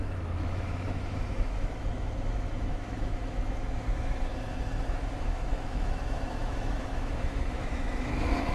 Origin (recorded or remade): remade